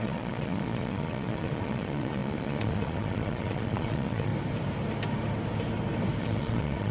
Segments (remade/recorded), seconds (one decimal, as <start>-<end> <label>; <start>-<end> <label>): 0.0-4.3 remade; 4.3-6.2 recorded; 6.2-6.9 remade